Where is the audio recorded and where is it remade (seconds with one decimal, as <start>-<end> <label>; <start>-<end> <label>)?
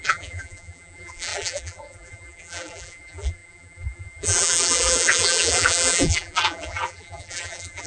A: 0.0-7.9 remade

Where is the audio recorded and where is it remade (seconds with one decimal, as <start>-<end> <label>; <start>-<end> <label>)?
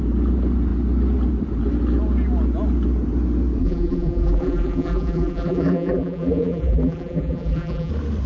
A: 0.0-3.6 recorded; 3.6-7.9 remade; 7.9-8.3 recorded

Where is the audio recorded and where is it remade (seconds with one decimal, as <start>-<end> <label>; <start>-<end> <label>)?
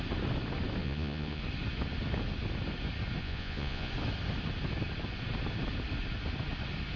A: 0.0-0.8 recorded; 0.8-1.4 remade; 1.4-3.2 recorded; 3.2-3.9 remade; 3.9-7.0 recorded